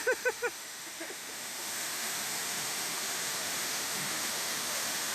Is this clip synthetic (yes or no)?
yes